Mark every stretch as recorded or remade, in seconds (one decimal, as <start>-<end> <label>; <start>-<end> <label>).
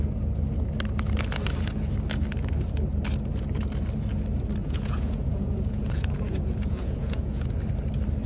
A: 0.0-4.6 recorded; 4.6-7.5 remade; 7.5-8.3 recorded